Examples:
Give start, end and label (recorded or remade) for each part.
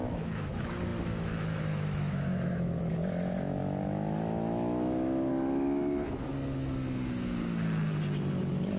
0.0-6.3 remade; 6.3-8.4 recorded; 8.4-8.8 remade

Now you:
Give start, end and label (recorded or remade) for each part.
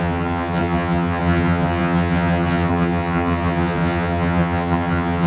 0.0-5.3 remade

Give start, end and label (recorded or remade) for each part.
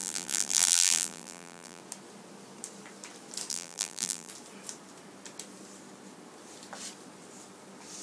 0.0-1.8 remade; 1.8-3.5 recorded; 3.5-4.3 remade; 4.3-8.0 recorded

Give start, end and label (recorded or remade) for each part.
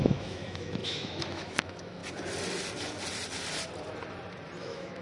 0.0-2.0 remade; 2.0-4.6 recorded; 4.6-5.0 remade